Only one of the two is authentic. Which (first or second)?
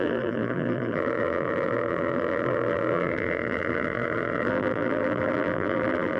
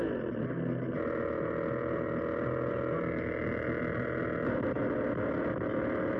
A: second